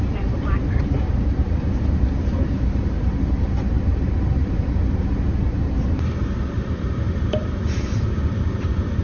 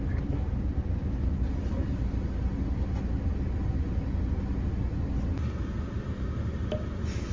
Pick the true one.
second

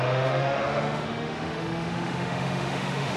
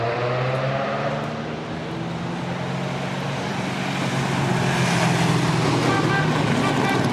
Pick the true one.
second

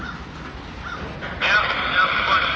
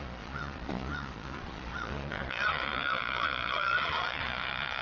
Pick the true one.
first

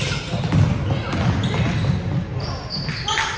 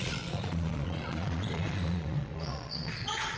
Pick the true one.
first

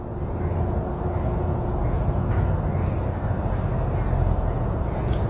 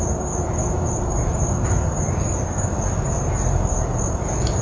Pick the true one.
first